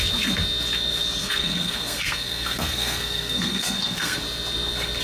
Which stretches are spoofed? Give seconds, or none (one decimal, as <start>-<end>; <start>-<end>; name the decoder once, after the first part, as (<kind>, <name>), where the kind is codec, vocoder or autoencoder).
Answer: 1.2-4.2 (codec, SNAC)